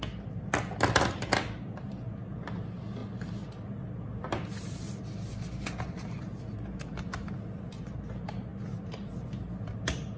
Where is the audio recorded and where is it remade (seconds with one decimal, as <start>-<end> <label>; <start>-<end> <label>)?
0.0-10.2 recorded